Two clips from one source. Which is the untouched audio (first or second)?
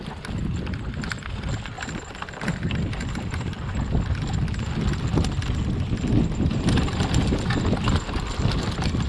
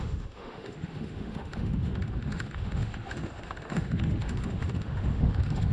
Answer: first